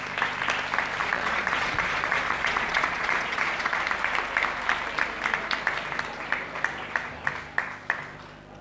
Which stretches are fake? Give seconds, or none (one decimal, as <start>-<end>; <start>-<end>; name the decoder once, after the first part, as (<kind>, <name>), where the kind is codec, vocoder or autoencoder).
1.0-3.8 (vocoder, Vocos)